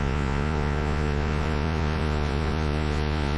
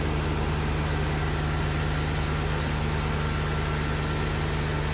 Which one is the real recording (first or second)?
second